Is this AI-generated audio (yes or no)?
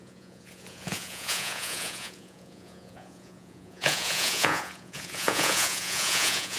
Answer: yes